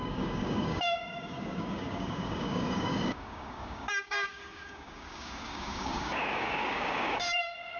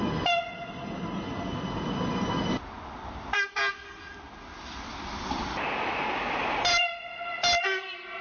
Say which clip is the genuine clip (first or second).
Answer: second